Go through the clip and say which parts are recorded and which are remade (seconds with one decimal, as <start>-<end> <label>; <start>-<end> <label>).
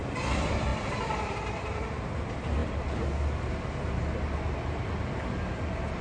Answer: 0.0-6.0 recorded